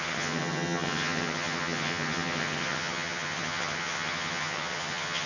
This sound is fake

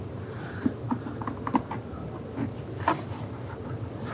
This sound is real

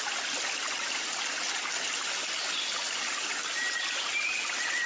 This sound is real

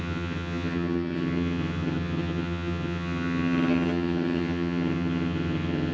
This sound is fake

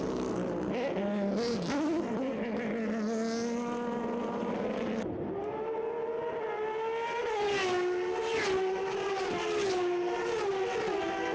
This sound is real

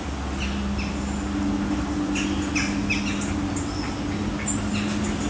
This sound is real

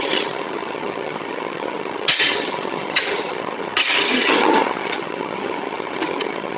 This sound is fake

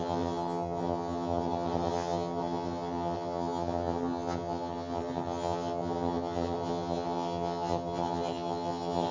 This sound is fake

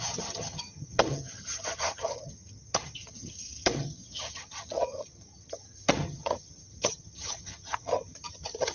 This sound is fake